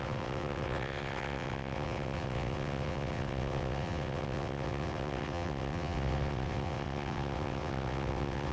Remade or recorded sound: remade